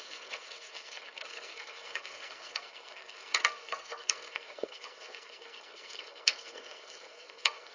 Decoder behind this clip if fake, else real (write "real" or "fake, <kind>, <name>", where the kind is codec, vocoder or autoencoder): fake, codec, SNAC